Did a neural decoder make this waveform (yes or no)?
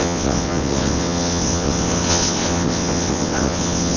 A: yes